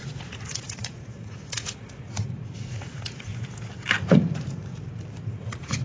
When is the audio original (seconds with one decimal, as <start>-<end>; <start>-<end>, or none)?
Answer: 3.3-4.0; 4.7-5.3